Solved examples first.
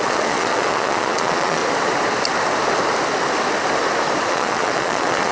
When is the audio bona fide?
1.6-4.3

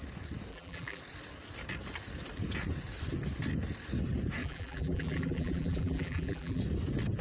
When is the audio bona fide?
0.0-0.5; 1.0-4.4; 6.6-7.2

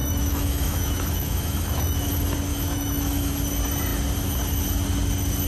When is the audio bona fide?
2.1-2.5; 3.3-5.5

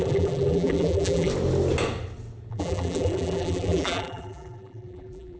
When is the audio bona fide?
1.3-2.5

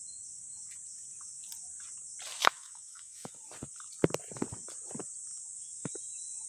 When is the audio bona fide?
0.0-2.4; 3.3-5.3; 5.9-6.5